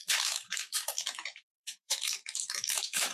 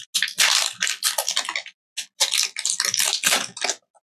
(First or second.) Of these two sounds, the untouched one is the second